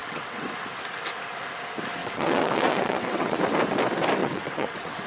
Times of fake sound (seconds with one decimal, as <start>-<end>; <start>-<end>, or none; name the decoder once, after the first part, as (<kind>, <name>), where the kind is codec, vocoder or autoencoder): 0.0-0.5 (vocoder, WaveNeXt); 2.0-3.4; 4.2-5.1